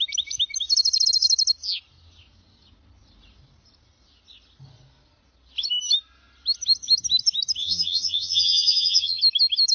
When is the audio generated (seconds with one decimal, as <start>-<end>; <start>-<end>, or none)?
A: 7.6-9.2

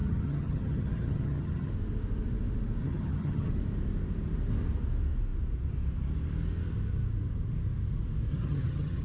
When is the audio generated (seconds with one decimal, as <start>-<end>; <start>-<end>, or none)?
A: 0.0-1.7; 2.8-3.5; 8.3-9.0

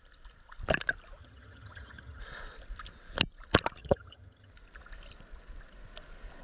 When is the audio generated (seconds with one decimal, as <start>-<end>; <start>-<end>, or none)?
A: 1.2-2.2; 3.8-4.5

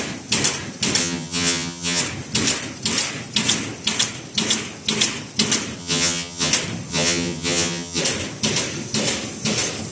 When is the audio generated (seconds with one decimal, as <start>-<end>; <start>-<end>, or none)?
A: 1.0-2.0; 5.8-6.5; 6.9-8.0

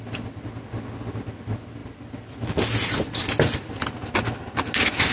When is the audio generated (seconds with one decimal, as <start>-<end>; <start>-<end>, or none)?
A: none